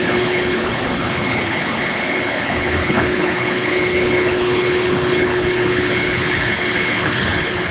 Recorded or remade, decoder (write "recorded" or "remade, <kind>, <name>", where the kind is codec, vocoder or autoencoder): remade, codec, HILCodec